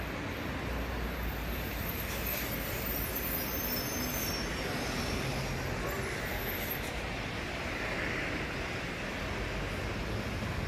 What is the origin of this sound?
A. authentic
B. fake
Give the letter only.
A